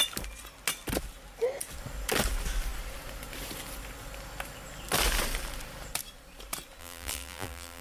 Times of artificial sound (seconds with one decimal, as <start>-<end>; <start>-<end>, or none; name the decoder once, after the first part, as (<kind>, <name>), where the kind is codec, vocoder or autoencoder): 6.8-7.8 (vocoder, BigVGAN v2)